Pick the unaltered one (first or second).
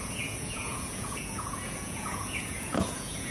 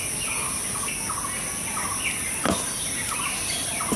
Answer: second